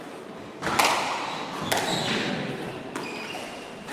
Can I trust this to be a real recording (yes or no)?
yes